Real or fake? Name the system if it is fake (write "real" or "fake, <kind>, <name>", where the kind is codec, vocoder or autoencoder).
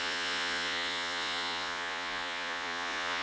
fake, vocoder, Vocos